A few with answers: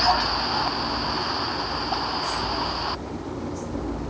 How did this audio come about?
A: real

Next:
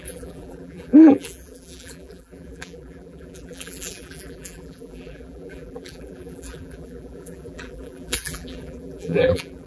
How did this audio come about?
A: fake